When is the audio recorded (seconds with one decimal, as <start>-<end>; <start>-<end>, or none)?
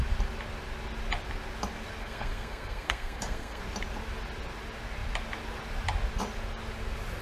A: 0.0-2.0; 3.6-7.2